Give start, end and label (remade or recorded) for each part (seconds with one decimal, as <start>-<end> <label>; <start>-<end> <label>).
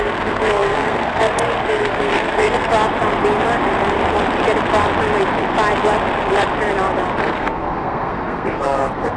0.0-2.7 remade; 2.7-7.2 recorded; 7.2-9.2 remade